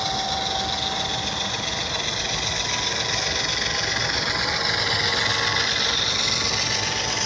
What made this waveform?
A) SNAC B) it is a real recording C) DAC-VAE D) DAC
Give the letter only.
B